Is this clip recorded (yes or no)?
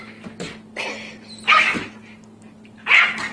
yes